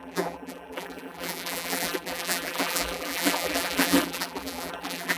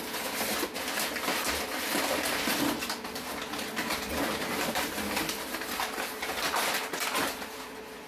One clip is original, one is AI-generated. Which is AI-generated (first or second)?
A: first